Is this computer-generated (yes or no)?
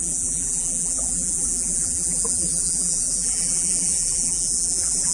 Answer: yes